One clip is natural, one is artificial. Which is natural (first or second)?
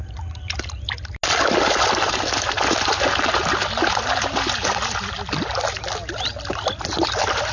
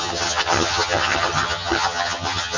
first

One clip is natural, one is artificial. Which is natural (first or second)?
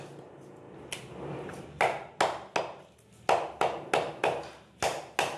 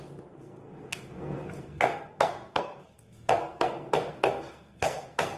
first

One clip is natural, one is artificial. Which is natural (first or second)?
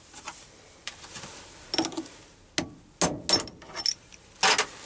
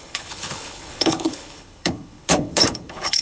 first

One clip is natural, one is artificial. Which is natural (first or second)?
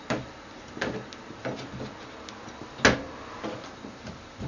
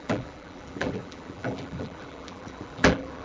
first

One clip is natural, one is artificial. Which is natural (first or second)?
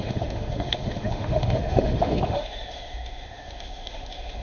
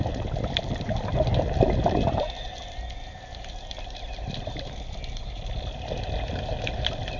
second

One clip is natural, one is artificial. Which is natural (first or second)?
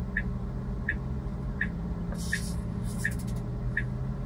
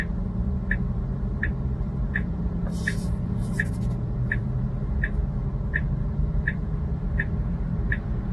first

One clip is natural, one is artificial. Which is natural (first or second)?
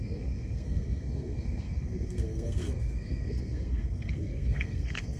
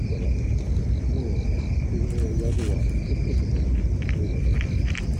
second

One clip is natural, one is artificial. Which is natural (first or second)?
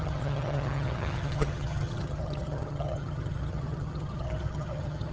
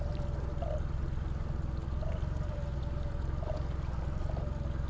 second